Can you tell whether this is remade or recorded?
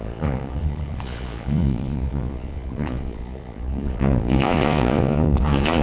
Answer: remade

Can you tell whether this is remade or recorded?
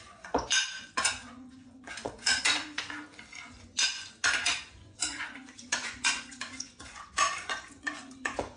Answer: remade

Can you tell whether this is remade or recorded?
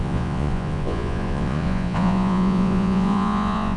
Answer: remade